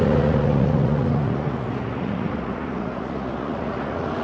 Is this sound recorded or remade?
remade